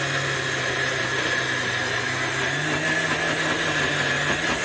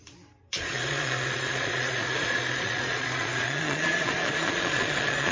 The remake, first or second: second